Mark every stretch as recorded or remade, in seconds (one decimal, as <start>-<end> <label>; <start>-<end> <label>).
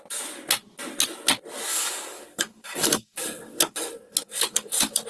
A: 0.0-1.7 recorded; 1.7-5.1 remade